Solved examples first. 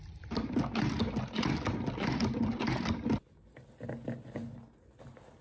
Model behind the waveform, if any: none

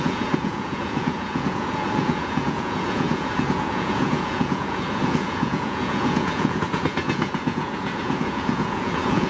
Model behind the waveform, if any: vocoder, Vocos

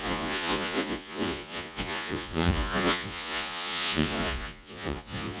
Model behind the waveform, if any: vocoder, Vocos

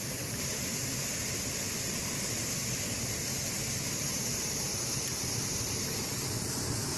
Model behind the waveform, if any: none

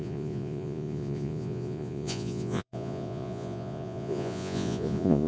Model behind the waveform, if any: vocoder, Vocos